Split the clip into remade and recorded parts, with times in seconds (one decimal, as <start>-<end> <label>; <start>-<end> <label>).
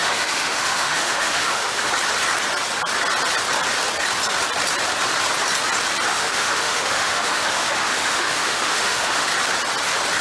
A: 0.0-1.9 remade; 1.9-6.1 recorded; 6.1-9.3 remade; 9.3-10.2 recorded